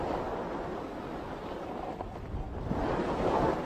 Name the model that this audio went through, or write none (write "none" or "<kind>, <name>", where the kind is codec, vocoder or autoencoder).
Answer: none